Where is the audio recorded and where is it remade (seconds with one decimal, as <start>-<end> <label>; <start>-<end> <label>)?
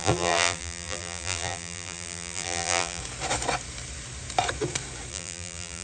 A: 0.0-3.0 remade; 3.0-5.1 recorded; 5.1-5.8 remade